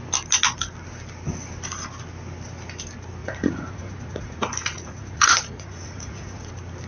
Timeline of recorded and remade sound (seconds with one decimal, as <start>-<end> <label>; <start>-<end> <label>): 0.0-3.2 recorded; 3.2-6.5 remade; 6.5-6.9 recorded